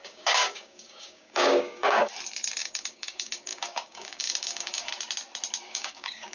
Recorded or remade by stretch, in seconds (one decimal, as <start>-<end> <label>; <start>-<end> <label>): 0.0-2.1 remade; 2.1-2.6 recorded; 2.6-4.9 remade; 4.9-5.7 recorded; 5.7-6.3 remade